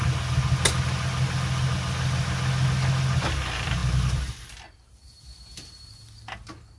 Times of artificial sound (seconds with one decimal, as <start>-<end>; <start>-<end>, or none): none

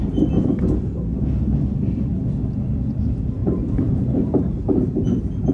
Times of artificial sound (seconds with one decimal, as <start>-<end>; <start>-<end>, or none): 3.4-5.5

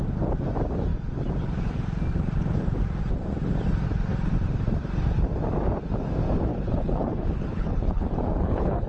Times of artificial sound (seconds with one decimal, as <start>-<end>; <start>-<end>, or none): 6.5-8.9

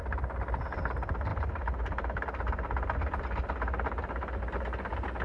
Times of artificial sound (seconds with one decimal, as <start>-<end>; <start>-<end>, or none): none

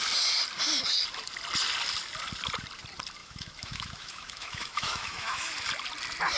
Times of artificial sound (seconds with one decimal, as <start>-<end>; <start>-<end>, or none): 3.2-5.5

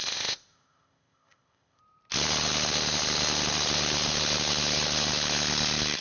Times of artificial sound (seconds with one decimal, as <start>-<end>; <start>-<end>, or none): 0.0-1.8

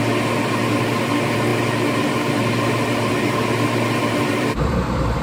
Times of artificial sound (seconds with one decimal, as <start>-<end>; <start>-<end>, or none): 4.3-5.2

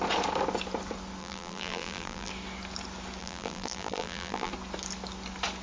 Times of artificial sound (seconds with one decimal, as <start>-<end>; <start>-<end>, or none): 1.2-2.3; 3.2-4.5